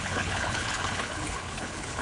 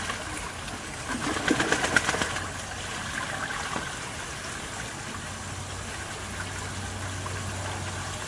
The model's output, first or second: first